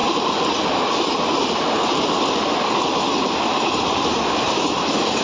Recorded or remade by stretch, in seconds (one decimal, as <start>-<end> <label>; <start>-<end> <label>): 0.0-5.2 recorded